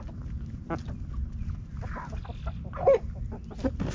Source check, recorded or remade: recorded